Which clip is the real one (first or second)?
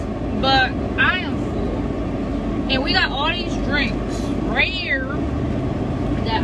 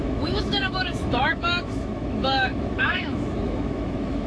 first